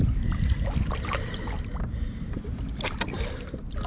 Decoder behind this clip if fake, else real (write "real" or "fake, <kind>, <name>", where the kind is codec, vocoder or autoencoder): real